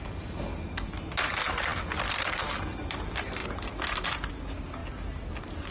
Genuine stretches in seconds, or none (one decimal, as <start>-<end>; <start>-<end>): 0.0-5.7